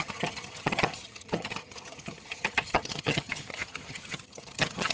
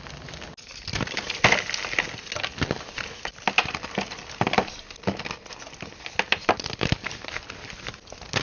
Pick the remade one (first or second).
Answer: first